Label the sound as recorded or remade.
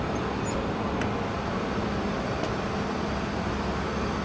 recorded